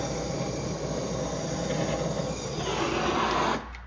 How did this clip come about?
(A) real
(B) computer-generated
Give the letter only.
A